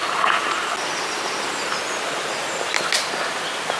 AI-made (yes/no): no